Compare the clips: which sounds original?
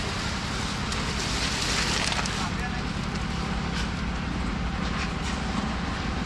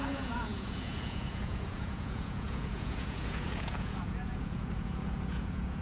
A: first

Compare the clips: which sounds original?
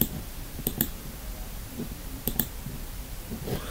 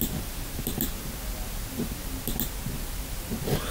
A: second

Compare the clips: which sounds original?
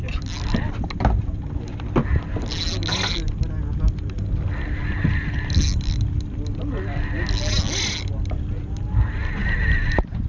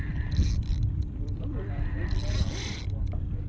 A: first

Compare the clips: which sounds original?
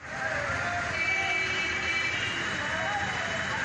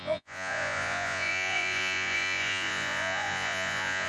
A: first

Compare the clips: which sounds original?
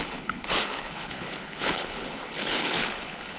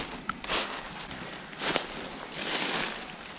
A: second